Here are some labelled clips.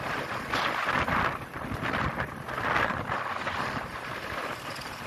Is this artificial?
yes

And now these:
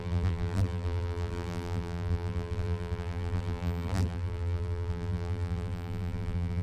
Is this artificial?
yes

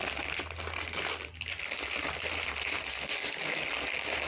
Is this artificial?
no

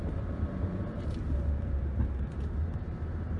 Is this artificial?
yes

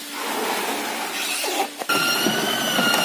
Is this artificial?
no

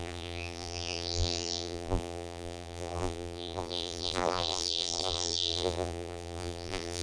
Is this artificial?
yes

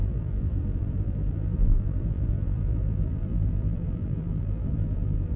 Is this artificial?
yes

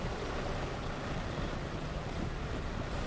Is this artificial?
yes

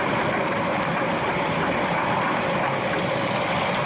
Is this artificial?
no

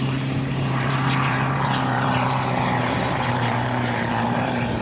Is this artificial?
yes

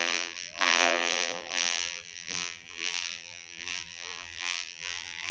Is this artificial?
yes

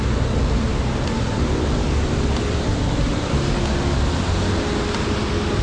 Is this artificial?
no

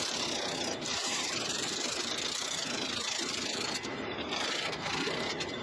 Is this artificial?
yes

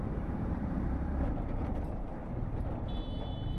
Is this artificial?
yes